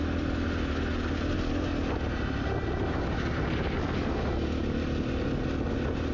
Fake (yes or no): no